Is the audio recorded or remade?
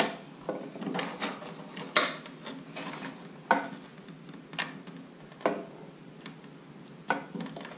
recorded